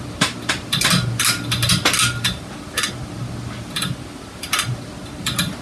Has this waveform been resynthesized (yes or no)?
no